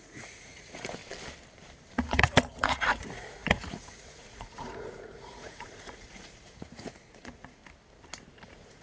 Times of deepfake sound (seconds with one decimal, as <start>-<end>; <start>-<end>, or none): 0.0-1.0; 1.9-7.6; 8.3-8.8